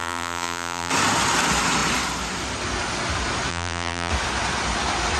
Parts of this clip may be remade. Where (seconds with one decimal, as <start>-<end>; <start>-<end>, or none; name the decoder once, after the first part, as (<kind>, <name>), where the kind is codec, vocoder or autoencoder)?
0.0-0.9 (vocoder, BigVGAN v2); 3.5-4.1